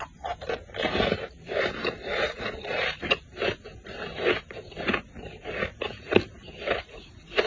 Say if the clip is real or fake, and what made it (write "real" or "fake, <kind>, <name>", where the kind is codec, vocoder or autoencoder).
fake, vocoder, BigVGAN v2